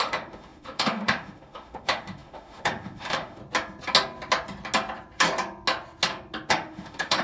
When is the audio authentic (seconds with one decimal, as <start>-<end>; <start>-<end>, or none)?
3.4-6.5